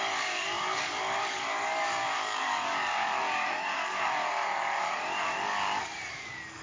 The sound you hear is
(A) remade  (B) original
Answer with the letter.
A